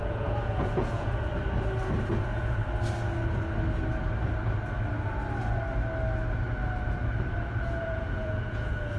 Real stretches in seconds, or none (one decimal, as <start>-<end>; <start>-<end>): 1.3-2.1; 2.6-7.6